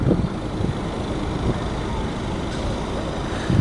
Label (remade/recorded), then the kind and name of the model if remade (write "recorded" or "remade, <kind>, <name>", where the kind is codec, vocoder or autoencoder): recorded